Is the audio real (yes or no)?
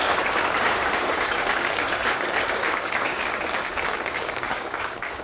no